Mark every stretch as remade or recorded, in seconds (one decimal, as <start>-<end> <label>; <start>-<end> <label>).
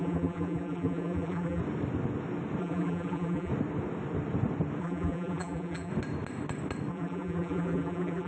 0.0-1.6 remade; 1.6-2.6 recorded; 2.6-3.5 remade; 3.5-4.8 recorded; 4.8-5.9 remade; 5.9-6.9 recorded; 6.9-8.3 remade